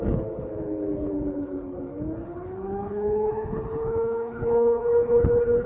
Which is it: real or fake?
fake